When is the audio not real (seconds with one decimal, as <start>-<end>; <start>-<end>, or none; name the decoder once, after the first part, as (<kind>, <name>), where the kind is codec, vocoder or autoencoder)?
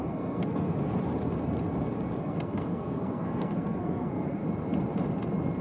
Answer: 0.0-0.7 (codec, SNAC); 2.2-4.4